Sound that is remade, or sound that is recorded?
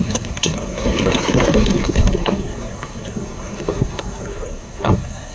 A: remade